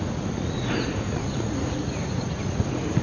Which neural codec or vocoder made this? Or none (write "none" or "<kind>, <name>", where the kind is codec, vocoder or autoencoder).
vocoder, Vocos